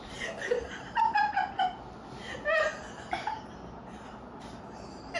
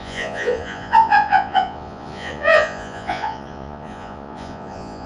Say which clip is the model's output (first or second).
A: second